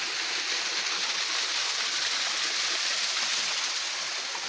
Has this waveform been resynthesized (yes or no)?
no